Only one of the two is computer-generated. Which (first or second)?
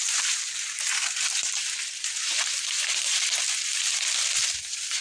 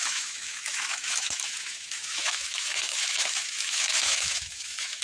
second